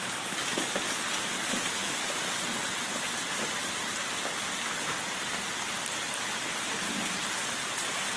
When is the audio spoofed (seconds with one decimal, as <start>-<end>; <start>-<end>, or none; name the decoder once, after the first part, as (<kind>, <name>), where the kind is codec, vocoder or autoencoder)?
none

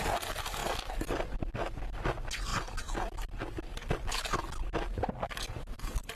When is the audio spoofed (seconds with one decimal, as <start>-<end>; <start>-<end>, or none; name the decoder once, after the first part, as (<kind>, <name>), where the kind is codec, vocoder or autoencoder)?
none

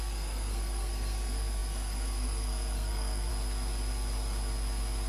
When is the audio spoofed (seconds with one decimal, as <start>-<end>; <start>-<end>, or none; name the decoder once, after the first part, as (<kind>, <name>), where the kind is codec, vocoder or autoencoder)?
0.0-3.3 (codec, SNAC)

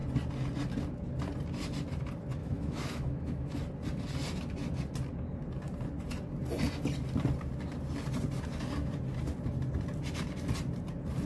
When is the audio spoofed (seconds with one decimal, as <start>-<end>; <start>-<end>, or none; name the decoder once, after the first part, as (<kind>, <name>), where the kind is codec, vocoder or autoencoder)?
2.4-3.6 (autoencoder, DAC-VAE)